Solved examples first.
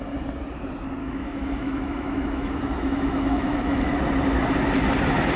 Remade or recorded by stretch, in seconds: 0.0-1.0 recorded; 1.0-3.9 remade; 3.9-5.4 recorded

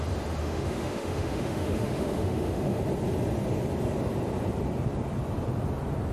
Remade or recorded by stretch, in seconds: 0.0-0.4 recorded; 0.4-2.8 remade; 2.8-6.1 recorded

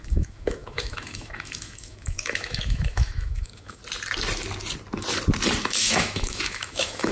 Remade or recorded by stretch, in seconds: 0.0-3.8 remade; 3.8-5.6 recorded; 5.6-7.1 remade

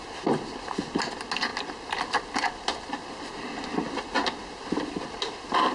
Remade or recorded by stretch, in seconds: 0.0-5.7 recorded

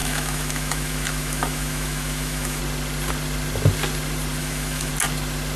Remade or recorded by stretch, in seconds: 0.0-2.6 remade; 2.6-4.4 recorded; 4.4-4.9 remade; 4.9-5.6 recorded